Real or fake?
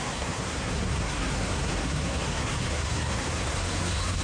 fake